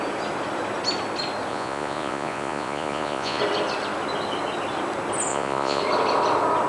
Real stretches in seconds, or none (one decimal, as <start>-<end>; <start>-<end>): 0.0-1.5; 3.4-5.3; 5.8-6.7